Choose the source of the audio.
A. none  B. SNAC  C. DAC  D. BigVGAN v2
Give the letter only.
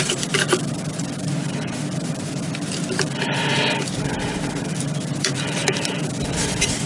D